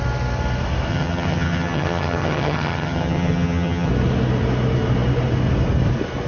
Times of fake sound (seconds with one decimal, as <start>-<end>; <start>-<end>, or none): 0.9-3.9